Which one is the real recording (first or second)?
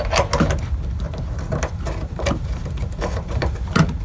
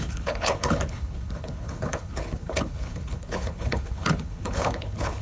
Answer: first